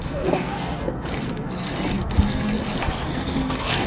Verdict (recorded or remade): remade